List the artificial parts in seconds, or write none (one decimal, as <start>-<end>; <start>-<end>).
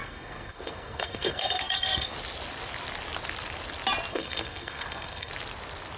0.0-2.1; 4.1-5.3